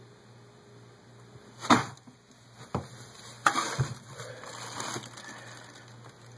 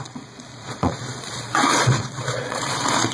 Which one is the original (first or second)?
first